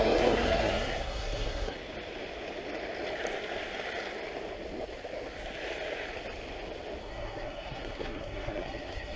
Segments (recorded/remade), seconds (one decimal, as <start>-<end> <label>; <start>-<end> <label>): 0.0-1.8 remade; 1.8-7.0 recorded; 7.0-9.2 remade